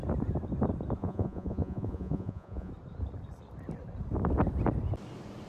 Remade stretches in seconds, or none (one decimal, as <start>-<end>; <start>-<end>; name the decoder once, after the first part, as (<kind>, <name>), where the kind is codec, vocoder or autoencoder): 1.0-2.7 (vocoder, Vocos)